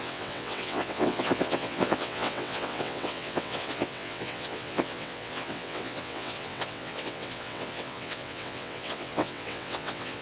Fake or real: fake